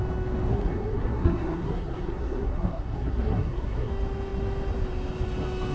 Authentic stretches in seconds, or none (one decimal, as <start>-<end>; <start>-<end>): 0.0-0.5; 3.9-5.7